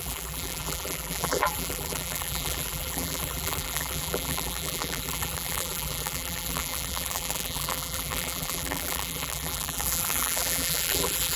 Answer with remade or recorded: remade